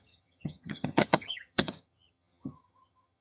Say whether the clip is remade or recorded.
remade